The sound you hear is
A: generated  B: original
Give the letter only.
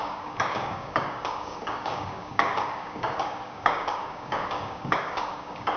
A